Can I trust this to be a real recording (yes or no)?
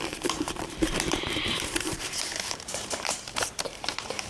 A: no